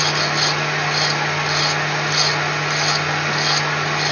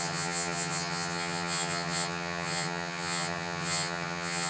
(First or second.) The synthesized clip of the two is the second